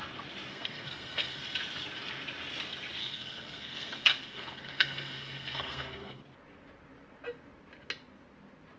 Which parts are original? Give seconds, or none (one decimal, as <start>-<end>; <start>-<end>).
0.0-0.5; 1.4-3.0; 6.2-8.8